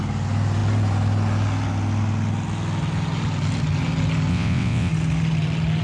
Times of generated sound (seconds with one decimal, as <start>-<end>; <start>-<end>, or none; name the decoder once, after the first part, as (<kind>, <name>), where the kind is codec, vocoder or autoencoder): 4.3-4.9 (vocoder, WaveNeXt)